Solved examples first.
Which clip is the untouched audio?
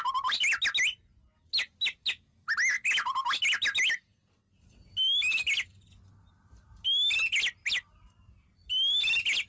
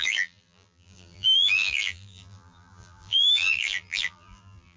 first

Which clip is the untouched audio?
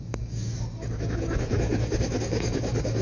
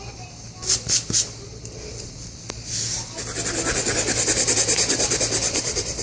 second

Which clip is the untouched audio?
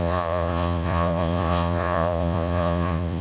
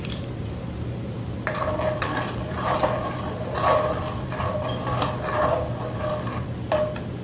second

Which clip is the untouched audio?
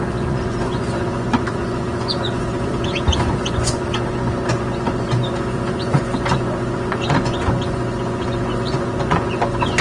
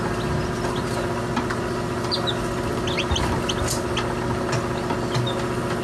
second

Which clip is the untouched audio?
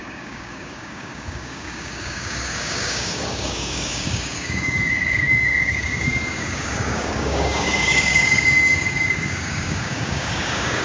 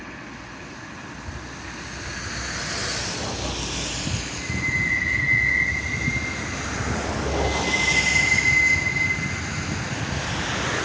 second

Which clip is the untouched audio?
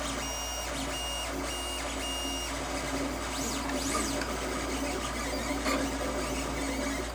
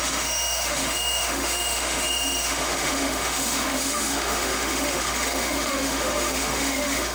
first